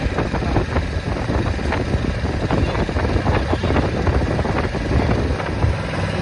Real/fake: real